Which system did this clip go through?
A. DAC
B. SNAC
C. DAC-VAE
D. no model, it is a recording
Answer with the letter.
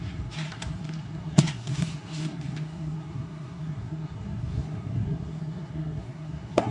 B